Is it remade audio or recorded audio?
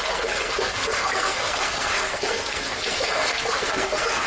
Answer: remade